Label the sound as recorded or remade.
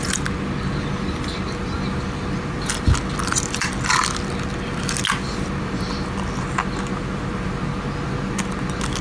recorded